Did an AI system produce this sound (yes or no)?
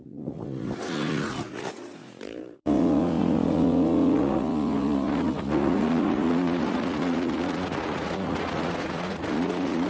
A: yes